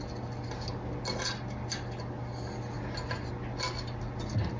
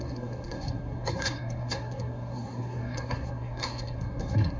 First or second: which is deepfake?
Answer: second